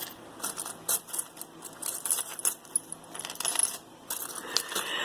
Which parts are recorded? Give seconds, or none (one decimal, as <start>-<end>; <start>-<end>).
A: 0.0-5.0